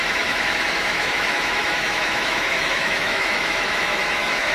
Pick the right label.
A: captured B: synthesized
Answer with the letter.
B